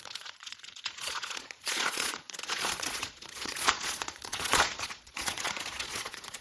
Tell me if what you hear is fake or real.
fake